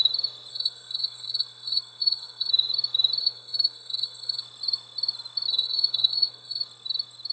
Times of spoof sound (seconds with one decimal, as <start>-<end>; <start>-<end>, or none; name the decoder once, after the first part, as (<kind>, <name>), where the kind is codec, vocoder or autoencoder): 0.5-2.5 (codec, SNAC); 3.2-4.4; 5.5-6.6